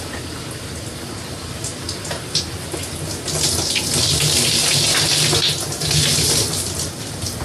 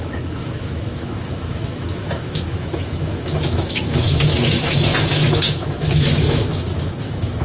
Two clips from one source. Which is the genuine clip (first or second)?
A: first